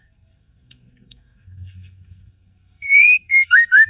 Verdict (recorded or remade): remade